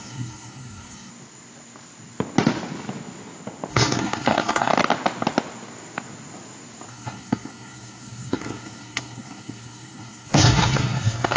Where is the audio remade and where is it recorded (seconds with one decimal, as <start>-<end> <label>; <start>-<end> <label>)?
0.0-1.1 remade; 1.1-3.7 recorded; 3.7-4.7 remade; 4.7-6.9 recorded; 6.9-11.4 remade